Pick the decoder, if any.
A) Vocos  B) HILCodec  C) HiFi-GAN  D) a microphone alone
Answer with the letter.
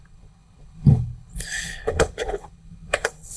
B